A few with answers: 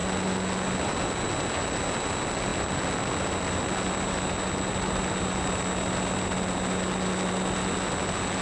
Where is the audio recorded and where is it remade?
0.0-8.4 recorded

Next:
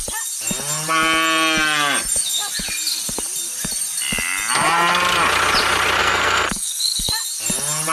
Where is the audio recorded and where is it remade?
0.0-6.0 recorded; 6.0-7.1 remade; 7.1-7.9 recorded

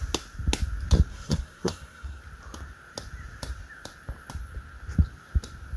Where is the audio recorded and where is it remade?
0.0-1.1 recorded; 1.1-2.2 remade; 2.2-5.8 recorded

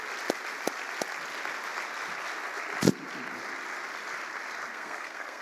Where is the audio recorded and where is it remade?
0.0-4.7 recorded; 4.7-5.4 remade